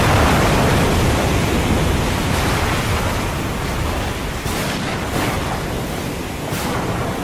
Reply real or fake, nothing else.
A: fake